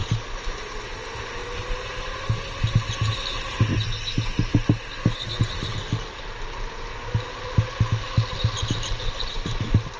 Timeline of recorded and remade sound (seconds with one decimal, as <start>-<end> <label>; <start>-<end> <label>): 0.0-10.0 recorded